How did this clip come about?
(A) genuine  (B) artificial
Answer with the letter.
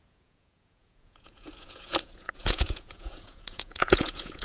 B